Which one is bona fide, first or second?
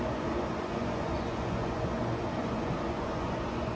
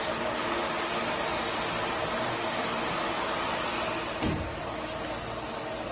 second